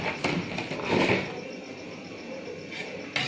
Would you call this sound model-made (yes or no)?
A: no